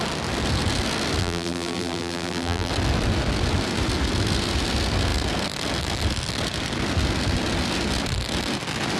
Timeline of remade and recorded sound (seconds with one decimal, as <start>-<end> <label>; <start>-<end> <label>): 0.0-1.2 recorded; 1.2-2.7 remade; 2.7-9.0 recorded